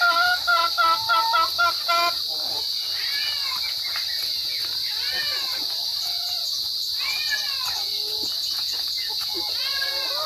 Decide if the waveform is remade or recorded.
recorded